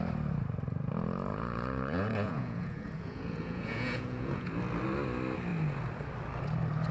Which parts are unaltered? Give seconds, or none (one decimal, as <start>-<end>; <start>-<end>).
0.0-1.3; 4.5-6.9